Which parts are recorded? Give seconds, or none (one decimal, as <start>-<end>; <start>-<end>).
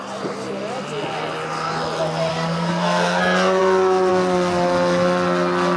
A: 0.0-2.3; 3.2-5.8